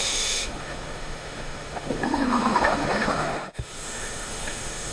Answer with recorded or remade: remade